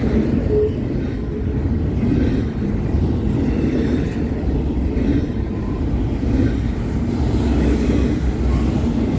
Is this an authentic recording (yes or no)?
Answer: yes